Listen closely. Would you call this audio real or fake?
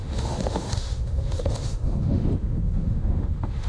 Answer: fake